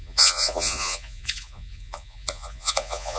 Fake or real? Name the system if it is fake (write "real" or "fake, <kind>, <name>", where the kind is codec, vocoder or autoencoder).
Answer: fake, vocoder, Vocos